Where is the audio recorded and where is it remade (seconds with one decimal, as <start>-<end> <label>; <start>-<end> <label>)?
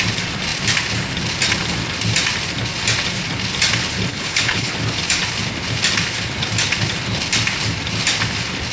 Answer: 0.0-4.1 recorded; 4.1-4.7 remade; 4.7-8.7 recorded